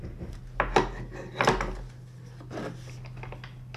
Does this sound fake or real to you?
real